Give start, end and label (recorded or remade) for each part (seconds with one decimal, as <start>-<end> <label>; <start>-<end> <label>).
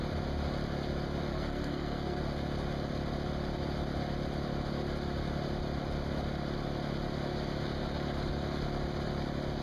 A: 0.0-1.3 recorded; 1.3-2.2 remade; 2.2-9.6 recorded